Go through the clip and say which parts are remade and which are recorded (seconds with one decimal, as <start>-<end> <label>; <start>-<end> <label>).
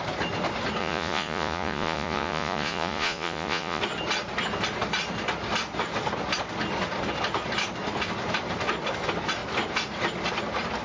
0.0-0.8 recorded; 0.8-3.8 remade; 3.8-10.8 recorded